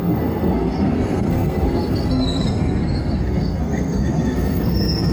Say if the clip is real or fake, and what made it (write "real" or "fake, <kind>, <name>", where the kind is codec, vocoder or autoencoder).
fake, codec, SNAC